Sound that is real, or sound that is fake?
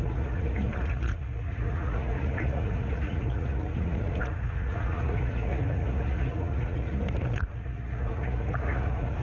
fake